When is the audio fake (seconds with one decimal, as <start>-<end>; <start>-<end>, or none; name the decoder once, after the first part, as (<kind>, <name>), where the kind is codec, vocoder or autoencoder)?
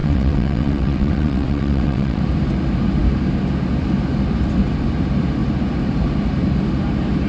0.0-2.2 (vocoder, WaveNeXt)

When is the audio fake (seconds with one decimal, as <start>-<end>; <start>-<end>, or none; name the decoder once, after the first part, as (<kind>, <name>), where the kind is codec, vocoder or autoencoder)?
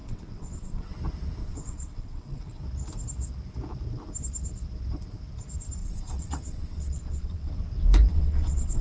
0.0-0.9 (vocoder, WaveNeXt); 1.4-2.6; 5.8-7.5; 8.1-8.8